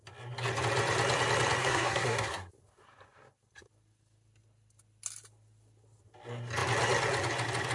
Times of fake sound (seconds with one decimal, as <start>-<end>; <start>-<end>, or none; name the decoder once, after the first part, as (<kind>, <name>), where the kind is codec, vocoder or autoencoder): 1.6-2.5 (codec, SNAC)